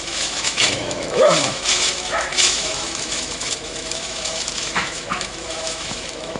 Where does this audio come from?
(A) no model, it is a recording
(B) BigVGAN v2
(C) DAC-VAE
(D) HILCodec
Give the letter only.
C